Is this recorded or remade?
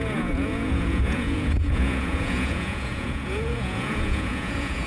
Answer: remade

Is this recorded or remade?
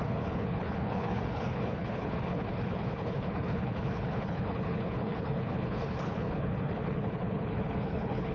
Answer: remade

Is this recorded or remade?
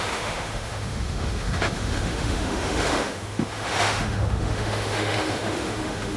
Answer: remade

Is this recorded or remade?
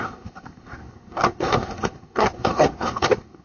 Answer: remade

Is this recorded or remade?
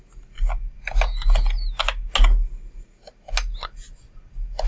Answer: recorded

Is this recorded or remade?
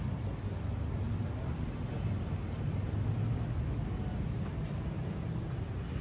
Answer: recorded